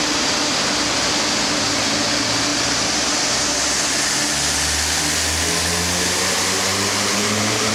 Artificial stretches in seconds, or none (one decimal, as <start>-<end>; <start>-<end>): 2.5-4.0; 6.7-7.7